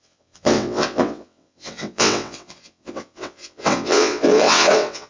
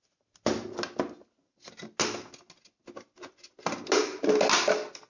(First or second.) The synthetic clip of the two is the first